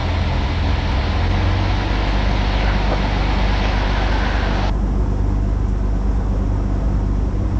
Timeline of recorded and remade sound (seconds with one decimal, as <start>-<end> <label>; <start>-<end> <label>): 0.0-7.6 recorded